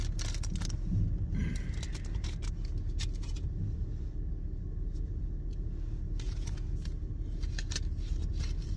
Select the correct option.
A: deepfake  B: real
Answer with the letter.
B